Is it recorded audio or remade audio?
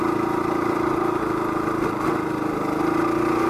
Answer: recorded